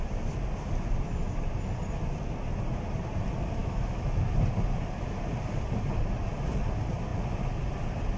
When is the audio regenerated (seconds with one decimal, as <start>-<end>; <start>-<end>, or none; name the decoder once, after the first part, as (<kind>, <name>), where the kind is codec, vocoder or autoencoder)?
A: 3.6-4.3 (autoencoder, DAC-VAE)